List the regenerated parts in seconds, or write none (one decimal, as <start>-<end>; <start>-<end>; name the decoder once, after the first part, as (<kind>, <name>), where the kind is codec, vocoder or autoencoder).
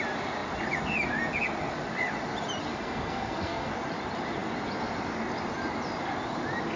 2.7-3.7 (codec, SNAC)